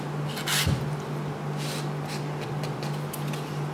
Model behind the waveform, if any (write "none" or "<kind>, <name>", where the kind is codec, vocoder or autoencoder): none